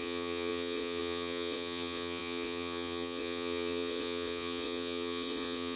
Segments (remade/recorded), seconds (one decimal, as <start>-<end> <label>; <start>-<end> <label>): 0.0-5.8 remade